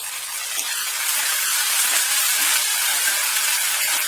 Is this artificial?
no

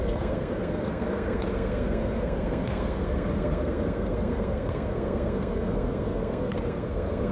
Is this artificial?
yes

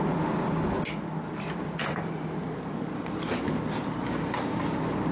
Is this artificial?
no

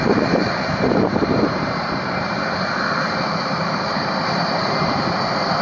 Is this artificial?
yes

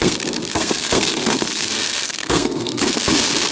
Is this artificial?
yes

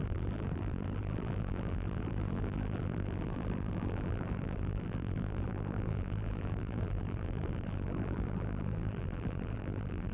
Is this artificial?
yes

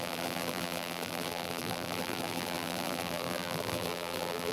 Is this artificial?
yes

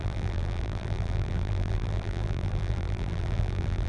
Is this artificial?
yes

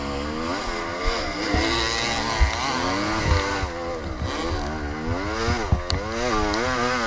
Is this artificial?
no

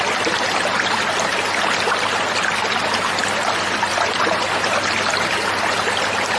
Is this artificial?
no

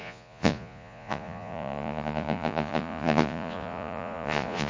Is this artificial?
yes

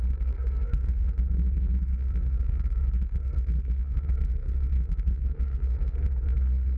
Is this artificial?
yes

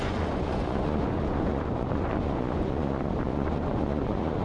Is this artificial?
yes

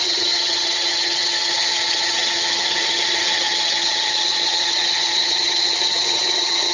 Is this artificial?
yes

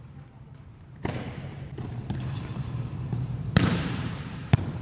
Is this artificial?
yes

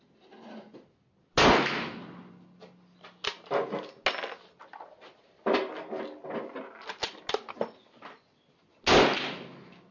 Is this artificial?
no